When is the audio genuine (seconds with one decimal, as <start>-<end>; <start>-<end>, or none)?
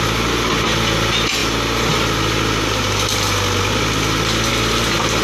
0.0-5.2